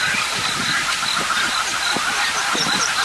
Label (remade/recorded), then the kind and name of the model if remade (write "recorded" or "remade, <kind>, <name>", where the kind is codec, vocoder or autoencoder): recorded